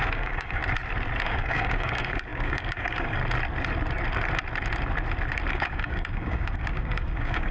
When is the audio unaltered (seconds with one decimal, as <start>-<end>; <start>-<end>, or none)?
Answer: 0.6-1.2; 3.2-5.5